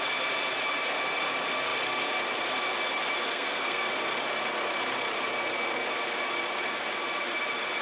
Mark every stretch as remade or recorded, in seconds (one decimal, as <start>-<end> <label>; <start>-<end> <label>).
0.0-3.3 recorded; 3.3-3.9 remade; 3.9-7.8 recorded